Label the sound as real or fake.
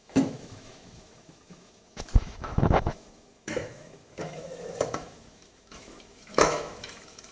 fake